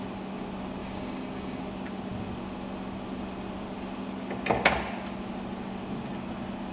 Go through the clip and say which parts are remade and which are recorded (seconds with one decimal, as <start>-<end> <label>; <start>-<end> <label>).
0.0-0.8 recorded; 0.8-1.6 remade; 1.6-6.7 recorded